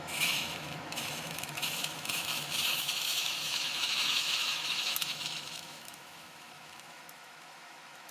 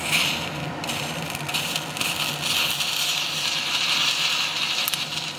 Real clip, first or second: second